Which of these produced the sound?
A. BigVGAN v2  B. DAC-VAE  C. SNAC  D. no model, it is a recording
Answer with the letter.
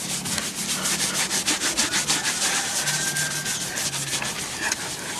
D